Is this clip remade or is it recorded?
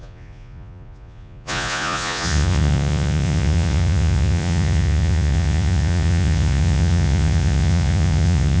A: remade